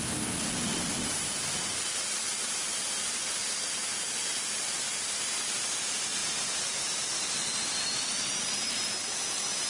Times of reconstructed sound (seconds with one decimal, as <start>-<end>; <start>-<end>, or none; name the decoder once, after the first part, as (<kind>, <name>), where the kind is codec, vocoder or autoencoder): 6.2-8.7 (vocoder, BigVGAN v2)

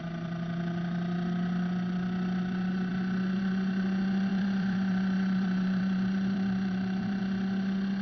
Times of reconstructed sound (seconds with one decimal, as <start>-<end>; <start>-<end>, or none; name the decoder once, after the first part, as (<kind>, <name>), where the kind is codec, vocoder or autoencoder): 4.3-7.2 (vocoder, BigVGAN v2)

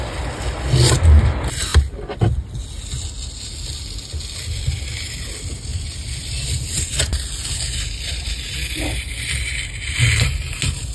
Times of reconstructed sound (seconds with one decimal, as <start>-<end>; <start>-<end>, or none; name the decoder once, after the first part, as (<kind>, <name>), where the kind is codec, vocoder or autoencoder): none

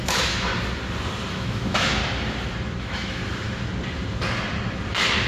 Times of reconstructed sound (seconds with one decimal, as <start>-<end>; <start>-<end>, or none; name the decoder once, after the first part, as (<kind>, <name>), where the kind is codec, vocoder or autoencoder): 0.0-0.5 (autoencoder, DAC-VAE); 1.3-2.0; 2.8-3.2

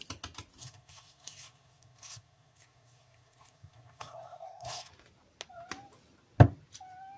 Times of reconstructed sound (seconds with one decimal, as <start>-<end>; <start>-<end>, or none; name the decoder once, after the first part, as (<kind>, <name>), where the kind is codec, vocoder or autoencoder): 0.6-4.9 (codec, SNAC)